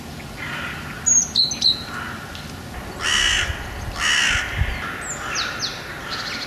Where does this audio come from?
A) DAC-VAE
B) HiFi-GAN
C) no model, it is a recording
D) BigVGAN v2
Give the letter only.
C